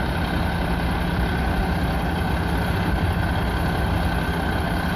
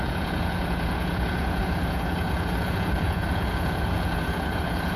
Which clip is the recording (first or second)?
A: first